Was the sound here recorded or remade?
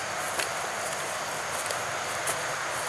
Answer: recorded